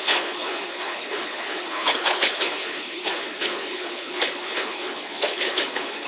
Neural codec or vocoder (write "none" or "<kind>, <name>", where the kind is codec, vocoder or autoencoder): codec, HILCodec